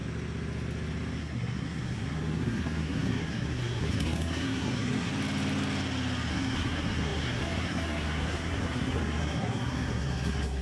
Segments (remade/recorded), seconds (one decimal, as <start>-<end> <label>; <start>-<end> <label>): 0.0-1.2 recorded; 1.2-5.1 remade; 5.1-6.3 recorded; 6.3-10.6 remade